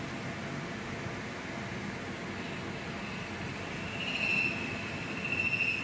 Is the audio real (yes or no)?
yes